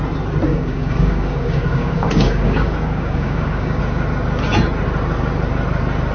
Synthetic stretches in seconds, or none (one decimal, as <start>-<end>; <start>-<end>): 0.5-3.8